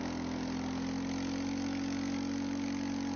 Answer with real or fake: real